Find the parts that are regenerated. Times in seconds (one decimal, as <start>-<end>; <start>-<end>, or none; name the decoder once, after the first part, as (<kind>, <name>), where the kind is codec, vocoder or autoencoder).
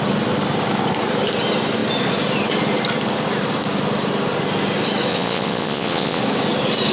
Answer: 5.1-6.2 (vocoder, Vocos)